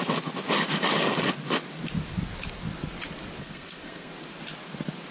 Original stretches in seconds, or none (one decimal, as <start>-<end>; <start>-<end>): 0.0-3.4; 4.1-5.1